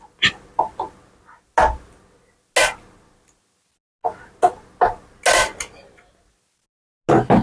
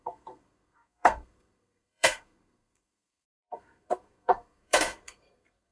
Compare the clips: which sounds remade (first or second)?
second